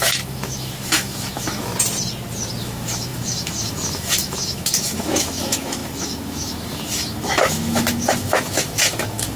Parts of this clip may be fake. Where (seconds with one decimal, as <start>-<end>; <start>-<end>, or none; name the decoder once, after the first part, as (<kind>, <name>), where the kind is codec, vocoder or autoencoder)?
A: 0.0-1.7 (autoencoder, DAC-VAE); 2.6-9.4